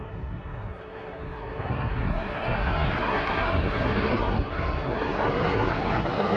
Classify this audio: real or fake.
fake